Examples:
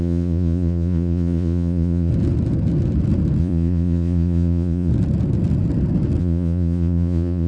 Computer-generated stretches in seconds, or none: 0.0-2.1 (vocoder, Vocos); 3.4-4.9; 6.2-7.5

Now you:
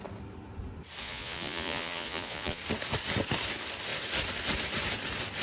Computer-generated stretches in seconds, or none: 1.0-2.6 (vocoder, Vocos)